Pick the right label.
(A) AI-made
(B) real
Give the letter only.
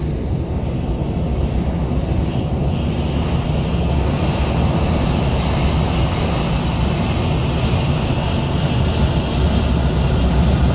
B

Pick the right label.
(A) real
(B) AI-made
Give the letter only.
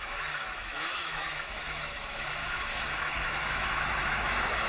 B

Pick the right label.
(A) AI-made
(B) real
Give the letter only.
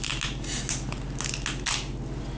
B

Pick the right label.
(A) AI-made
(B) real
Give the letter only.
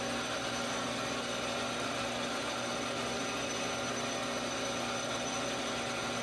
B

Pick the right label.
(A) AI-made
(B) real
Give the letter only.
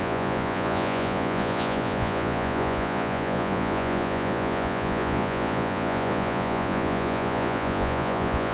A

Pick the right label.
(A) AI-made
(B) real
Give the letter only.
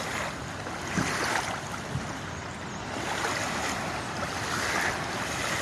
B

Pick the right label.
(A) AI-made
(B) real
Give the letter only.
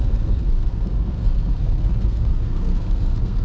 A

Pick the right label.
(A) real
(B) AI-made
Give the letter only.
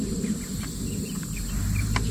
A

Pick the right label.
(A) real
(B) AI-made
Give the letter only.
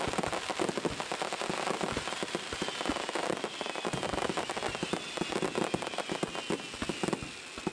A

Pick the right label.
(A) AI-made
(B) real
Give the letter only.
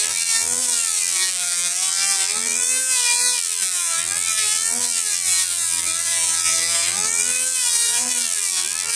A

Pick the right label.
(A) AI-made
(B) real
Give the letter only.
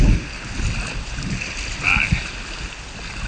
B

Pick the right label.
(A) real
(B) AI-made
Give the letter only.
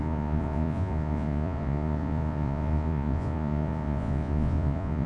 B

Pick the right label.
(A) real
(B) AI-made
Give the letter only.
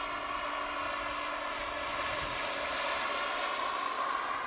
A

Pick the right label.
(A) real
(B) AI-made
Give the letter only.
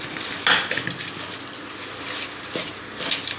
A